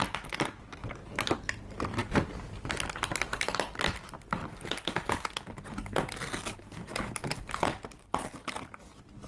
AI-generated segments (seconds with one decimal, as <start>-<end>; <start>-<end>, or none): 1.0-1.6